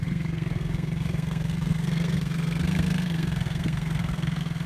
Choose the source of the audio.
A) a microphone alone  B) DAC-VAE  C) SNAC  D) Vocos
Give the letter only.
C